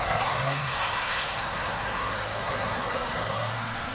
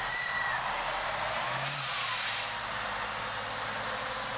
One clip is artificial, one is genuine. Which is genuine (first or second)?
second